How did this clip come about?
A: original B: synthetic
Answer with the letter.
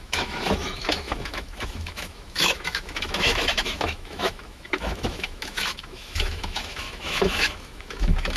B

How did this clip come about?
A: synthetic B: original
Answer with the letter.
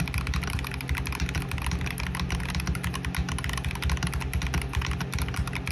B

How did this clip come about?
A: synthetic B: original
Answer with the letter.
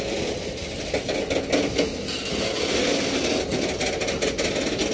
B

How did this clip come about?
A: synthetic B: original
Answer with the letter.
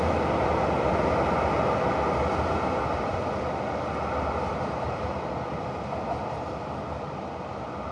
B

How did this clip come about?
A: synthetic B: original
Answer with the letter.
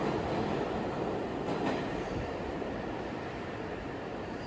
B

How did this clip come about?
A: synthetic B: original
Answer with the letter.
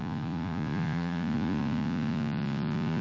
A